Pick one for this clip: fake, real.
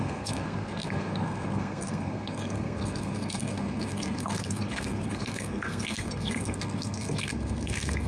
fake